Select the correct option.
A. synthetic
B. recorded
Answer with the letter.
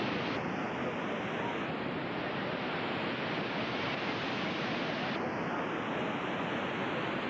B